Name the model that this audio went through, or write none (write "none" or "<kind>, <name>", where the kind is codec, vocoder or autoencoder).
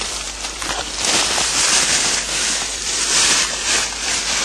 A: vocoder, BigVGAN v2